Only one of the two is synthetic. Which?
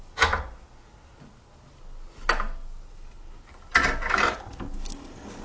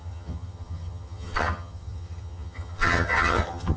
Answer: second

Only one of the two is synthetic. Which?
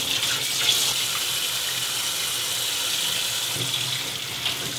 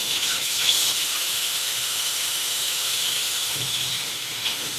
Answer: second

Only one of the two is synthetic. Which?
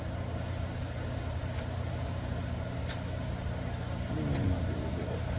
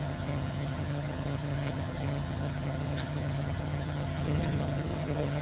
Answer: second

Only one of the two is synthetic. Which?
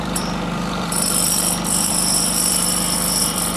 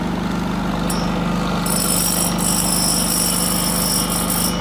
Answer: first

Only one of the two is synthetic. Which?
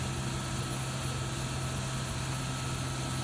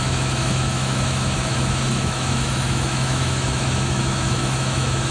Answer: second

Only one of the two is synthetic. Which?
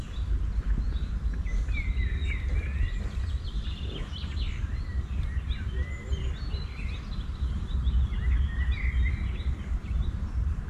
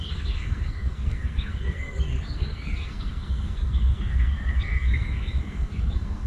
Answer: second